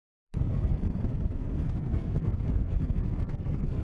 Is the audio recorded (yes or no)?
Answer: no